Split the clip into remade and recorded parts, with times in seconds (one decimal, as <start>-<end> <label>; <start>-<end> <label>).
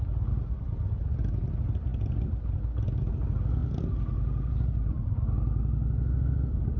0.0-6.8 recorded